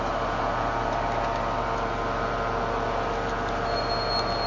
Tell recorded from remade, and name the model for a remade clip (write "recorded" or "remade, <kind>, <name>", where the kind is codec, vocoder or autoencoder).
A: recorded